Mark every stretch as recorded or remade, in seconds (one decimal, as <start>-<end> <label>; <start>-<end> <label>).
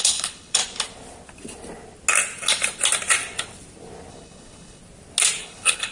0.0-0.6 remade; 0.6-4.1 recorded; 4.1-4.8 remade; 4.8-5.4 recorded; 5.4-5.9 remade